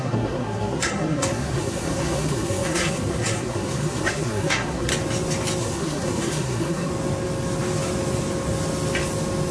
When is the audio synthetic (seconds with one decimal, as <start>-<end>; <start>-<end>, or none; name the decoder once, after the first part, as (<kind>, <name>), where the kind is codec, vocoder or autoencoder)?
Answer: 0.0-4.9 (codec, SNAC); 5.6-6.9

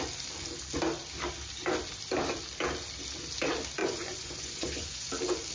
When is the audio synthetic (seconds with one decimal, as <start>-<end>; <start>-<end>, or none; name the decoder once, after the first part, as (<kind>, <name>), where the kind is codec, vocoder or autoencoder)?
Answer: 3.8-5.1 (vocoder, Vocos)

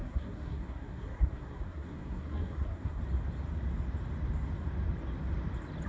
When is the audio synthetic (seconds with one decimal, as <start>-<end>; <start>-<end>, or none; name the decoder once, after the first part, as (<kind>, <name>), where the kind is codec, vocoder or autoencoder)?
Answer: 0.0-3.0 (codec, SNAC)